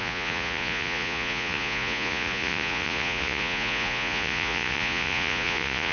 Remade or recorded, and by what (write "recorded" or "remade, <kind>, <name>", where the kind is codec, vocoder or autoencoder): remade, vocoder, Vocos